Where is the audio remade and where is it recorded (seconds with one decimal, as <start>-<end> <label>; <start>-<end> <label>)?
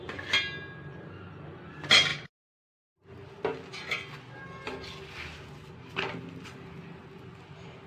0.0-7.9 recorded